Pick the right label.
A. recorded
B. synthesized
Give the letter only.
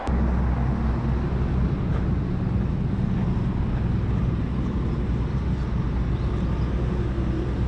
A